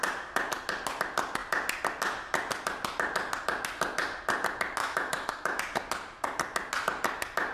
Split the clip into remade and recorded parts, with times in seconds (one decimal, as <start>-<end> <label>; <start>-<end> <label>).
0.0-4.8 recorded; 4.8-5.6 remade; 5.6-7.5 recorded